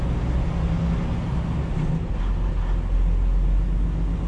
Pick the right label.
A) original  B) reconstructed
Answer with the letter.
A